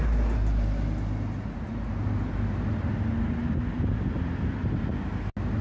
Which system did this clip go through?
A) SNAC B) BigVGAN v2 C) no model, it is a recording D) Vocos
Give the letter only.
C